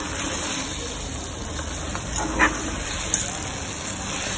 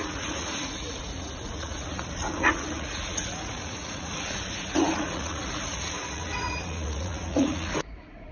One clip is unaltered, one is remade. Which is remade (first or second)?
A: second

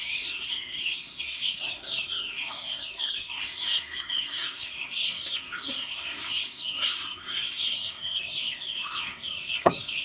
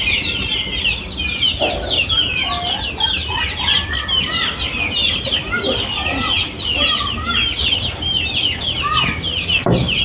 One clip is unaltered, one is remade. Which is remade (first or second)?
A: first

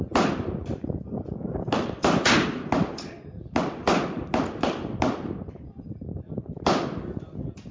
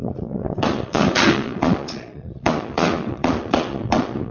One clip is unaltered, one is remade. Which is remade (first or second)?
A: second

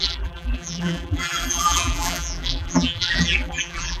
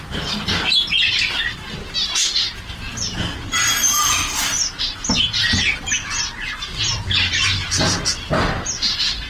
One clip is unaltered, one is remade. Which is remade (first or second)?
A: first